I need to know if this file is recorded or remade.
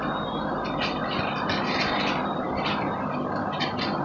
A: recorded